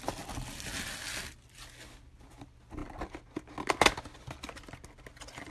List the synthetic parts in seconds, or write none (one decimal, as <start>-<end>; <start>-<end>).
none